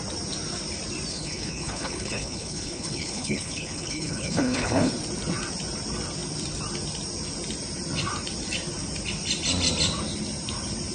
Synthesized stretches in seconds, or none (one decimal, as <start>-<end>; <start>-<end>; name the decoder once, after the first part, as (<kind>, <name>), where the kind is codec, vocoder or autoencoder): 1.1-4.9 (codec, HILCodec)